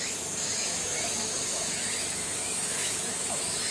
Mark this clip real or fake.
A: fake